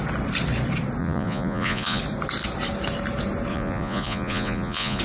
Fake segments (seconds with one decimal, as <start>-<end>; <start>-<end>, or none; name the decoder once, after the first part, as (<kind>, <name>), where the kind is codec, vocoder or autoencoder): 1.0-2.0 (vocoder, Vocos); 3.5-5.0